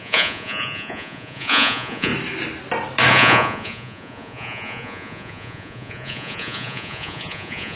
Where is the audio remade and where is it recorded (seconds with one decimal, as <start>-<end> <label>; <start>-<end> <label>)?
0.0-2.1 remade; 2.1-3.1 recorded; 3.1-7.8 remade